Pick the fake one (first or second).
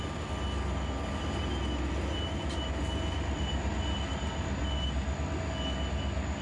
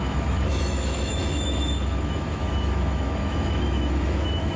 second